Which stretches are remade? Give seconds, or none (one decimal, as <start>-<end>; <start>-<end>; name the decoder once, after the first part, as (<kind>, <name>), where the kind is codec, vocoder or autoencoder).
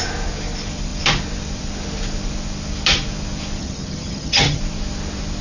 3.6-4.6 (vocoder, HiFi-GAN)